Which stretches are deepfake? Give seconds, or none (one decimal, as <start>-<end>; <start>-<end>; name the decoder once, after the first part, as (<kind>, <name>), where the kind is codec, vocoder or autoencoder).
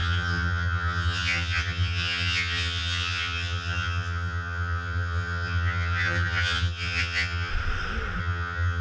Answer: 0.0-7.5 (vocoder, HiFi-GAN); 8.2-8.8